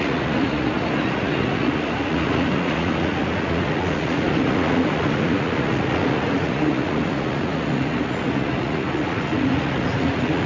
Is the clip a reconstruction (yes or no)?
yes